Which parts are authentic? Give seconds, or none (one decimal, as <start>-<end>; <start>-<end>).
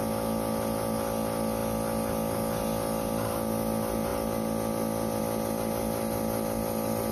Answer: 0.0-7.1